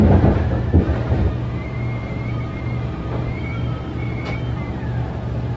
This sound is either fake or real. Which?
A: fake